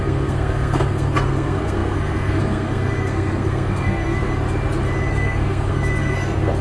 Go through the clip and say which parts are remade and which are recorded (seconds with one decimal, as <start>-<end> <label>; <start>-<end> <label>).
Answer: 0.0-4.3 remade; 4.3-5.1 recorded; 5.1-6.6 remade